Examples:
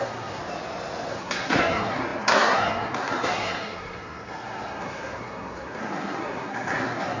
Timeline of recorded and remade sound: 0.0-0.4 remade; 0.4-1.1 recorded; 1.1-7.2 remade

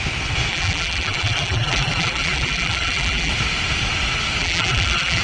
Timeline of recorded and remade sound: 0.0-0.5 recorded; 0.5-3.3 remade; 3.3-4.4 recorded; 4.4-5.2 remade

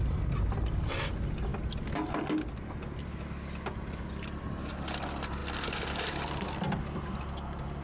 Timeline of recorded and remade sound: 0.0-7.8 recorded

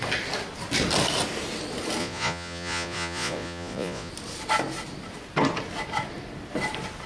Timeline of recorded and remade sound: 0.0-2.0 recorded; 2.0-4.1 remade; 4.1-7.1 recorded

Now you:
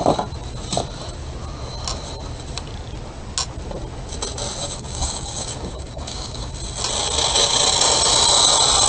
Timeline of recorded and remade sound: 0.0-4.6 recorded; 4.6-6.5 remade; 6.5-8.9 recorded

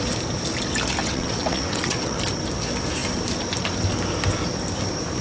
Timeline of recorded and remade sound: 0.0-1.0 recorded; 1.0-2.2 remade; 2.2-5.2 recorded